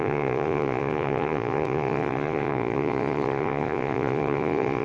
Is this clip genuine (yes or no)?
no